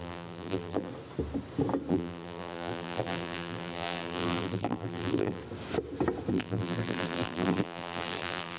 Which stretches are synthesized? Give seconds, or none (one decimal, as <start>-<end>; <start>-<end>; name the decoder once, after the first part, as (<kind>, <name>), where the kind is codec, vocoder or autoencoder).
0.0-0.9 (vocoder, BigVGAN v2); 1.9-5.4; 6.3-8.6